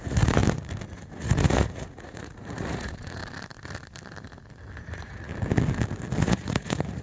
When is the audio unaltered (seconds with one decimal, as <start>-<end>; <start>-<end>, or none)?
0.4-0.9; 3.2-4.8; 5.3-6.2